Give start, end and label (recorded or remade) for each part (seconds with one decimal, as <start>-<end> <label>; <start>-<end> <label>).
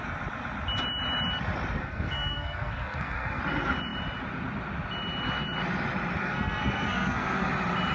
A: 0.0-1.8 recorded; 1.8-3.4 remade; 3.4-6.2 recorded; 6.2-7.5 remade; 7.5-7.9 recorded